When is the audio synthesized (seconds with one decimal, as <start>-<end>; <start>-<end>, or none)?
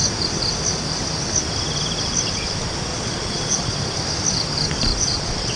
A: 2.9-3.7; 4.9-5.6